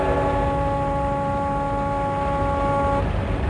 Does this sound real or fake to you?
real